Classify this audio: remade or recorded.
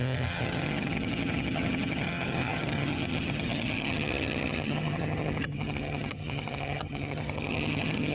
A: remade